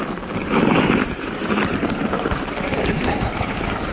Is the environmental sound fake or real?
fake